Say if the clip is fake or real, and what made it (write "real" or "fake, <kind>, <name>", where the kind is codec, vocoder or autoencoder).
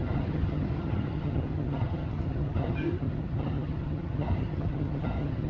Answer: fake, vocoder, HiFi-GAN